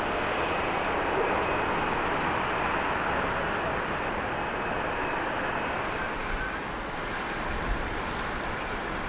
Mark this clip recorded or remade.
recorded